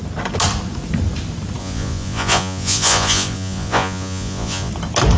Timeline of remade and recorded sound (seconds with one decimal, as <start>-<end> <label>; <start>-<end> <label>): 0.0-1.6 recorded; 1.6-4.7 remade; 4.7-5.2 recorded